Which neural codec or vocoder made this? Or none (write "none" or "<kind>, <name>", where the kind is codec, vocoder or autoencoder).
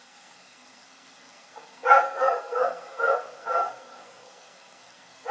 codec, SNAC